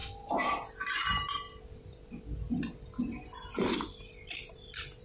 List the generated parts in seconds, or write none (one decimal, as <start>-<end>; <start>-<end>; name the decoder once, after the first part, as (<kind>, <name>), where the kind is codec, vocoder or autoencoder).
none